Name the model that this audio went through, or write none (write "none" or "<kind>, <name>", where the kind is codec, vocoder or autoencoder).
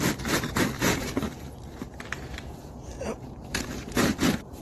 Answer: vocoder, BigVGAN v2